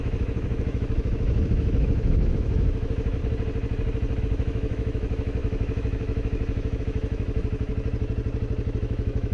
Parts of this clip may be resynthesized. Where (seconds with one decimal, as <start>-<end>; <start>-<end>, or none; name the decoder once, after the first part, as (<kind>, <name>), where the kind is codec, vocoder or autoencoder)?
0.0-3.2 (autoencoder, DAC-VAE); 4.2-7.7; 8.8-9.3